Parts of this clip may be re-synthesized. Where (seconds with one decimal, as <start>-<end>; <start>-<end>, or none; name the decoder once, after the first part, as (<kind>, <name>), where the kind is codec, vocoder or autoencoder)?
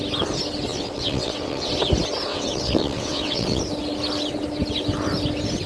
0.7-1.7 (vocoder, WaveNeXt); 2.3-3.6